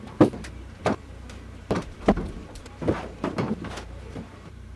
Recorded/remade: remade